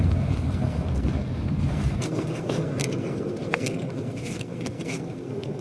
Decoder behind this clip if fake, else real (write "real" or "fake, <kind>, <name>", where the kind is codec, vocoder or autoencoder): fake, codec, SNAC